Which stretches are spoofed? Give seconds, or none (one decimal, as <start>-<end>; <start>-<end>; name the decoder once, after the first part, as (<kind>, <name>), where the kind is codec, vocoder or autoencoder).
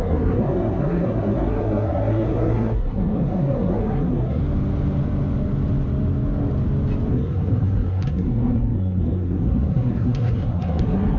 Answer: 0.0-4.4 (codec, SNAC); 7.1-11.2